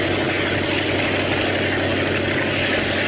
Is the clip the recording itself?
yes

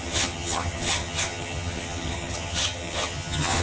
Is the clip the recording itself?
no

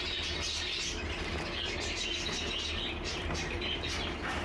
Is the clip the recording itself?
yes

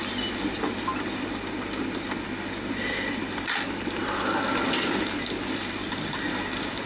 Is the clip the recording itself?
yes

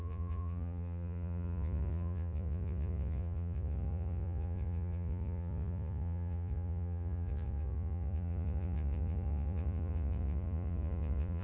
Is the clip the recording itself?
no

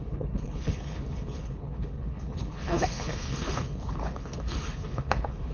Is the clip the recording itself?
no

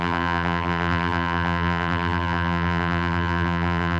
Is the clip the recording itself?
no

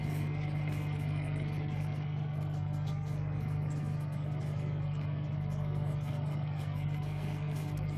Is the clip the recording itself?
no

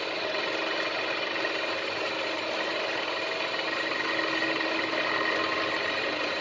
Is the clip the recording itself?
yes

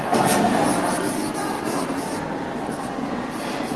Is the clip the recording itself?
yes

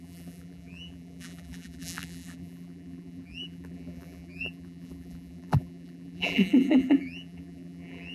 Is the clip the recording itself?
no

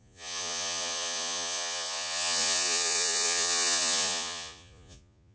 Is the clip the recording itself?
no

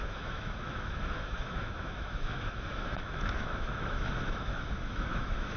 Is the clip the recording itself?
no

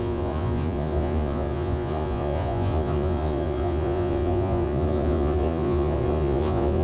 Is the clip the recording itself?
no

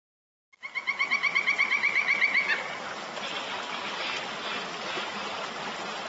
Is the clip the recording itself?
yes